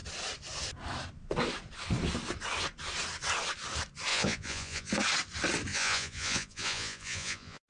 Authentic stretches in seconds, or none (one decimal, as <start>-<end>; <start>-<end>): 0.0-4.1; 4.9-5.7